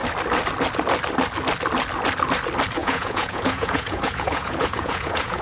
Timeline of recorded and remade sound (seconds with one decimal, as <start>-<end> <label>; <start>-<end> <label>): 0.0-2.8 recorded; 2.8-5.4 remade